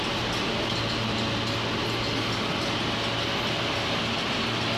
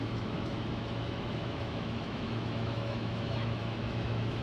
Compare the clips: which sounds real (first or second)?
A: first